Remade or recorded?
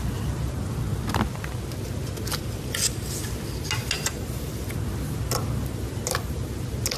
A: recorded